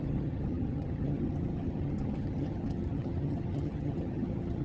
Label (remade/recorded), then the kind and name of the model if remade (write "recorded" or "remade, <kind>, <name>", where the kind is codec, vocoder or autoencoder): remade, vocoder, HiFi-GAN